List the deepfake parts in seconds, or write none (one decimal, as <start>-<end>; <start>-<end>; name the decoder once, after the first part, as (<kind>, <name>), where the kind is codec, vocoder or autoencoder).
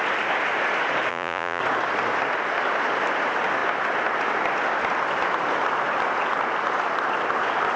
1.1-1.6 (vocoder, Vocos)